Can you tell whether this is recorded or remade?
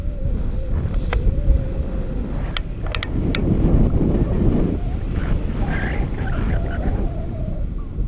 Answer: recorded